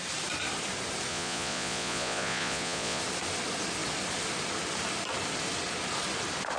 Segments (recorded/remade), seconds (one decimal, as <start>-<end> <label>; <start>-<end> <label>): 0.0-1.1 recorded; 1.1-3.0 remade; 3.0-6.6 recorded